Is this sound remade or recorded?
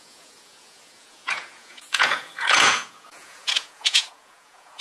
remade